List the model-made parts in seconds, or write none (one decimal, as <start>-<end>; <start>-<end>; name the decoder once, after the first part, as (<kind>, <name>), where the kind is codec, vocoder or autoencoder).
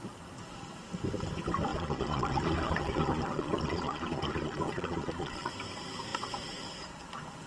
1.7-5.5 (vocoder, Vocos)